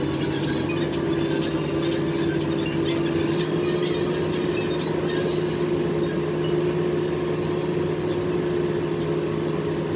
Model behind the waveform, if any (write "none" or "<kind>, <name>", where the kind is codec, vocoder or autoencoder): none